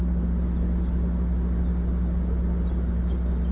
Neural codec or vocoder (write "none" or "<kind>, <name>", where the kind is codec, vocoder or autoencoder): none